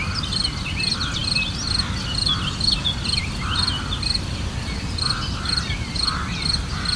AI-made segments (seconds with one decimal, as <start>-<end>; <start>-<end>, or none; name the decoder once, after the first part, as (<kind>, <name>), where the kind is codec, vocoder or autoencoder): none